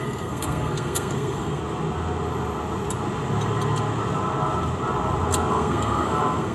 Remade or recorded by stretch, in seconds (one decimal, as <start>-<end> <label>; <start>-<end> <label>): 0.0-1.6 remade; 1.6-5.5 recorded; 5.5-6.5 remade